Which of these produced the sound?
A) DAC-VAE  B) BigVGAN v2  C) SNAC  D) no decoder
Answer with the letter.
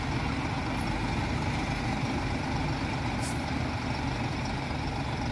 D